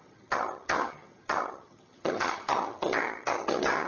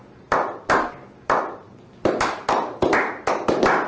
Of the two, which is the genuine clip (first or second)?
second